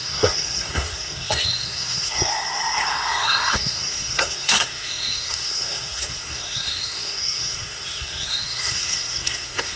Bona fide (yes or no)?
no